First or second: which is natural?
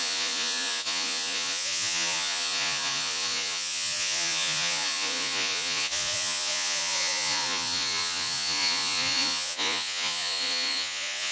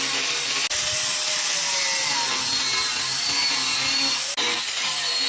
second